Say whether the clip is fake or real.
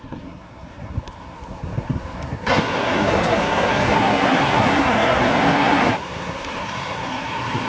fake